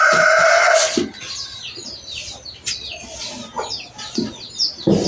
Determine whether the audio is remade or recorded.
recorded